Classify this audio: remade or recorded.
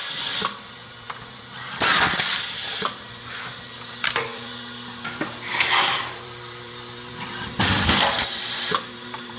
remade